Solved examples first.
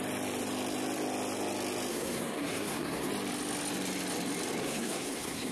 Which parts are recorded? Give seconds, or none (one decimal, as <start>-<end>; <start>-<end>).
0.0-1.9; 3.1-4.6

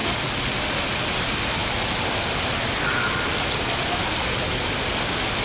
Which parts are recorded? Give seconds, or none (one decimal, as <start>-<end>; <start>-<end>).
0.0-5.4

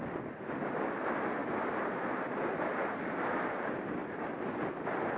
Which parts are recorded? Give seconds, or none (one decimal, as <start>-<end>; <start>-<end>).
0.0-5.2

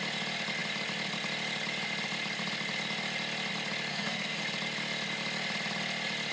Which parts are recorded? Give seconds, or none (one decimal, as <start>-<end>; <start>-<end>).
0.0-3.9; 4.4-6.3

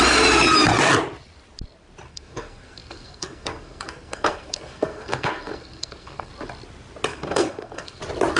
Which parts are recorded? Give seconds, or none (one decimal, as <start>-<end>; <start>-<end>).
0.0-2.1; 6.3-7.1; 8.0-8.4

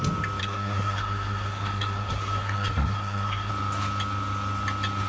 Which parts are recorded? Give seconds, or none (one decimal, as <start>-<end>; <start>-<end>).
0.0-0.4; 3.5-5.1